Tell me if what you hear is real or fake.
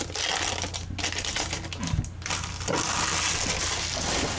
real